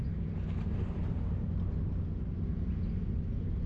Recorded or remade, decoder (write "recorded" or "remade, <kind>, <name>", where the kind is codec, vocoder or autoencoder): recorded